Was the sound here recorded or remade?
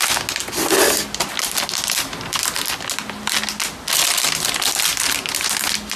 recorded